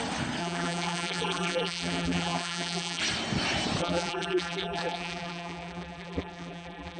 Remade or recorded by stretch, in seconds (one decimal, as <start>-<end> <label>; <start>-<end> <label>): 0.0-0.4 recorded; 0.4-3.0 remade; 3.0-3.8 recorded; 3.8-7.0 remade